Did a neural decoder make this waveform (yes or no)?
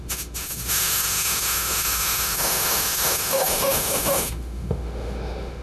yes